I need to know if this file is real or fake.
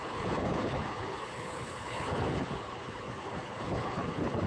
fake